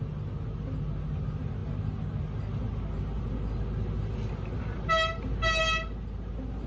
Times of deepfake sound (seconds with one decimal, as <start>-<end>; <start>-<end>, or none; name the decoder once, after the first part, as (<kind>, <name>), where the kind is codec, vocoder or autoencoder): none